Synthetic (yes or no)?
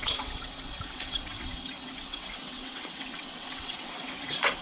yes